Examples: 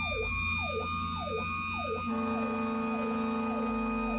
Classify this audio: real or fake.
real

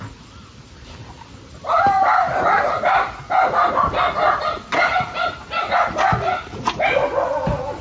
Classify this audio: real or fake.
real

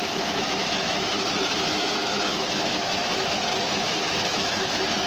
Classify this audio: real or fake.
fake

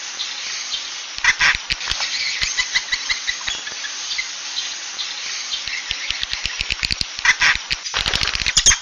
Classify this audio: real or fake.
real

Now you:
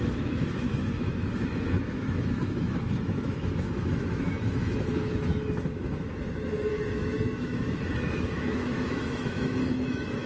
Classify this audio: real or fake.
fake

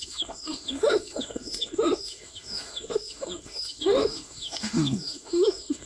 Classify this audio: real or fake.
fake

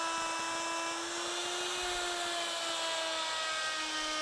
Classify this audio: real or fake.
real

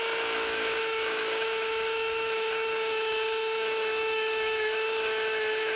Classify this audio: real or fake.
fake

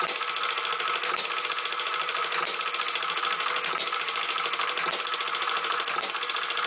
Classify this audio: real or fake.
real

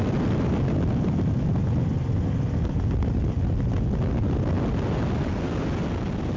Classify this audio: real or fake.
real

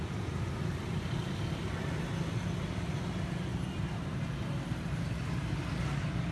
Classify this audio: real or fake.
real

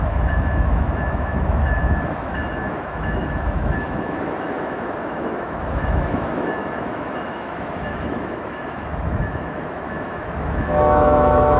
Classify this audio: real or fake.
fake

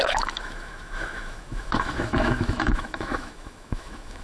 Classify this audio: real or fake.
fake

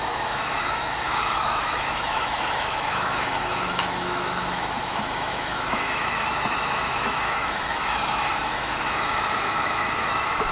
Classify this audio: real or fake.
fake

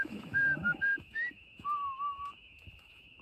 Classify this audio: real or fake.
fake